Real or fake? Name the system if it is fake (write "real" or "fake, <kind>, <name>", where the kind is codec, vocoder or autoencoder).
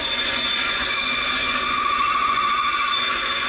fake, vocoder, Vocos